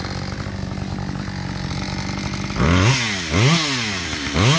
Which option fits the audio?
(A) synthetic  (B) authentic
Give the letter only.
B